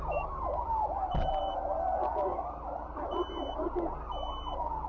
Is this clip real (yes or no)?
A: yes